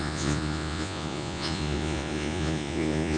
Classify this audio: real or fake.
fake